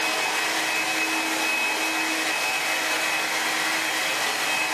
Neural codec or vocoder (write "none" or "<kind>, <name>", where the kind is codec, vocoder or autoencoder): none